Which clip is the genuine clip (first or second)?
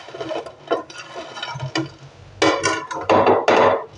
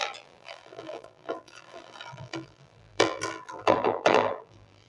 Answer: first